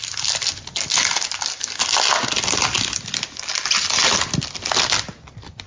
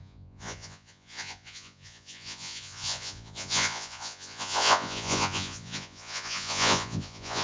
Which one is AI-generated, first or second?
second